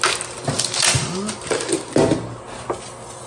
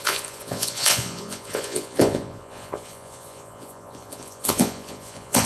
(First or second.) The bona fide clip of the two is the first